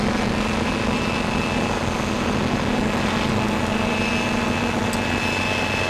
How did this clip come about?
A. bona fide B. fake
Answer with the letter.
A